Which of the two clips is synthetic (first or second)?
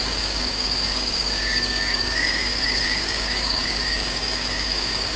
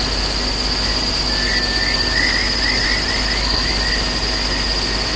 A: first